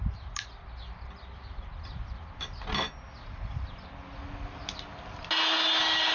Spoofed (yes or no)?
no